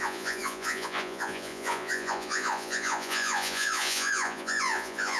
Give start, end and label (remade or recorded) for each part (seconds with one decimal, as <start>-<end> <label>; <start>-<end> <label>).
0.0-5.2 remade